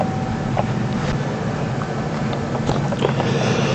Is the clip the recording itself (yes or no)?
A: yes